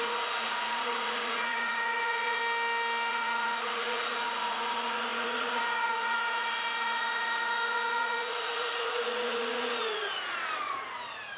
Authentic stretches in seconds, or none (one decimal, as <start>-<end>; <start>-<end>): 2.4-3.1